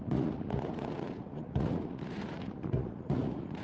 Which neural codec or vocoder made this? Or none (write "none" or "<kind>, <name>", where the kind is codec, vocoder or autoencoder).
vocoder, Vocos